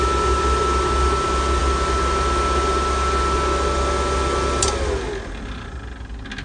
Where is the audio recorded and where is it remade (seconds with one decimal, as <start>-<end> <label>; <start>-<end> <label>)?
0.0-6.4 recorded